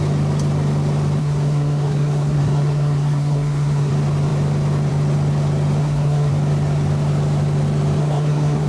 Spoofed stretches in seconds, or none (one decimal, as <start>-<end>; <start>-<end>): 1.2-3.9; 5.8-6.3; 8.0-8.7